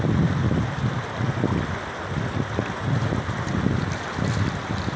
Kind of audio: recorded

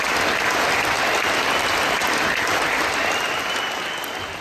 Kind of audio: recorded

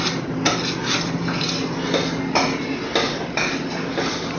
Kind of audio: recorded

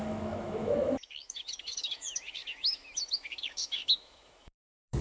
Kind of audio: remade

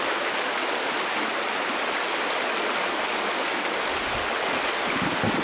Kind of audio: recorded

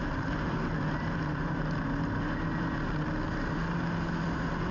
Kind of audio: recorded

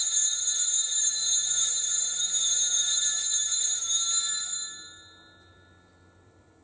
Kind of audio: recorded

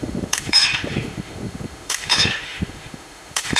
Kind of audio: remade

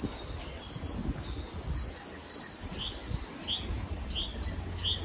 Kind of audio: recorded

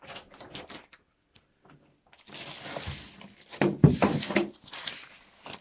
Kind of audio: recorded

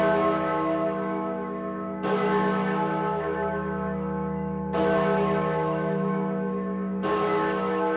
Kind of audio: remade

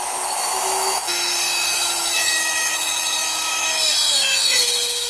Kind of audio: remade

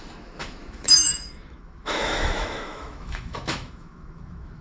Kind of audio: remade